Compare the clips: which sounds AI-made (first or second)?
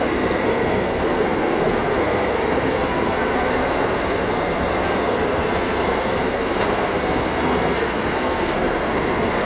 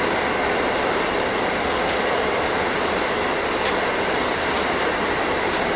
first